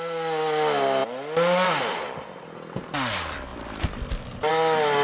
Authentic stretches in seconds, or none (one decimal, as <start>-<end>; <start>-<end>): 0.0-5.0